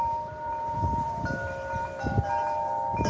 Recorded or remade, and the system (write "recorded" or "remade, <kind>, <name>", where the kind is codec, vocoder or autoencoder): remade, vocoder, BigVGAN v2